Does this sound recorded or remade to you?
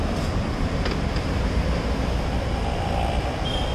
recorded